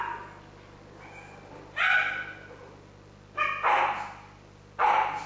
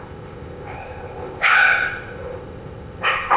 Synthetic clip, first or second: second